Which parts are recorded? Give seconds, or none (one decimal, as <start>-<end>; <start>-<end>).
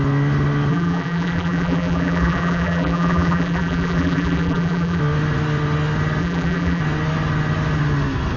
0.0-0.7; 5.0-6.2; 6.8-8.4